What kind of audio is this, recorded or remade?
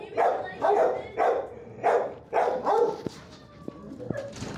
remade